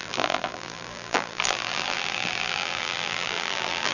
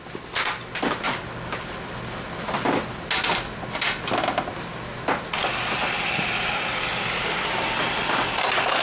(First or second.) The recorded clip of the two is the second